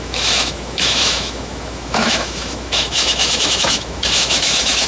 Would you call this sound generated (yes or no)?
yes